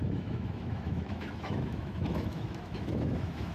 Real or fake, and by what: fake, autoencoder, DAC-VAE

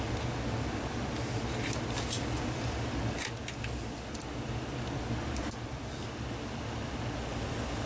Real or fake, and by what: real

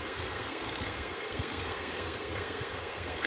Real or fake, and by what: fake, codec, SNAC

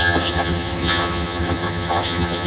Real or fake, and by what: fake, vocoder, HiFi-GAN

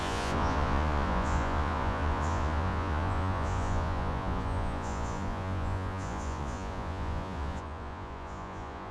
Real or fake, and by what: fake, vocoder, Vocos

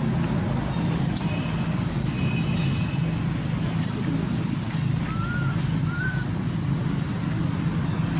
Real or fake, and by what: real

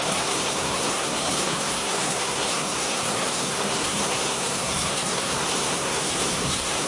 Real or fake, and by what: fake, codec, SNAC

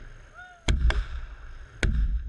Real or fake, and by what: real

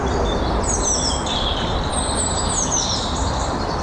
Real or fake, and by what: fake, vocoder, BigVGAN v2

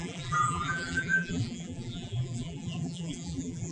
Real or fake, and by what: fake, vocoder, BigVGAN v2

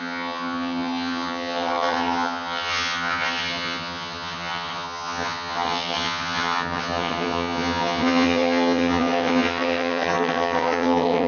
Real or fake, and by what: fake, vocoder, HiFi-GAN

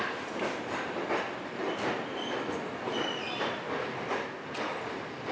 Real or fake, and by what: fake, vocoder, BigVGAN v2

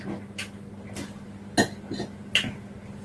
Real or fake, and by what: real